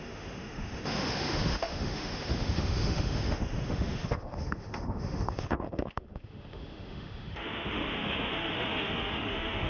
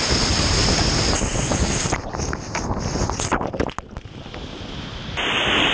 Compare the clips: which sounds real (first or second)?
second